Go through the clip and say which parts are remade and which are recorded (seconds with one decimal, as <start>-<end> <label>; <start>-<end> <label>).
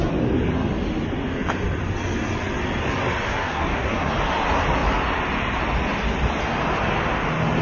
0.0-3.3 recorded; 3.3-4.1 remade; 4.1-7.6 recorded